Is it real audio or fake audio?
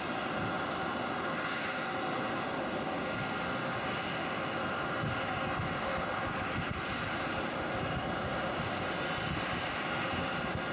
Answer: real